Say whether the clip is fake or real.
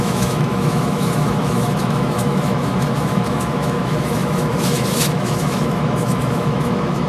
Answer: fake